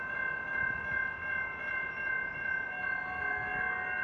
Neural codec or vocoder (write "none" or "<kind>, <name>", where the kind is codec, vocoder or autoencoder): none